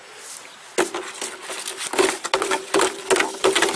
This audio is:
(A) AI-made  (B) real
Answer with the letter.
B